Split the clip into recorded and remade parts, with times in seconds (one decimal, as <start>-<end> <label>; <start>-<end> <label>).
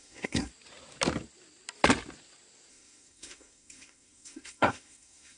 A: 0.0-0.5 remade; 0.5-2.7 recorded; 2.7-5.4 remade